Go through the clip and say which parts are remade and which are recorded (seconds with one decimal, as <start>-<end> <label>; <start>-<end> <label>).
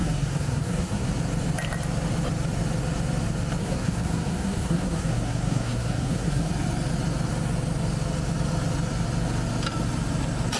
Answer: 0.0-1.1 remade; 1.1-3.6 recorded; 3.6-6.5 remade; 6.5-10.6 recorded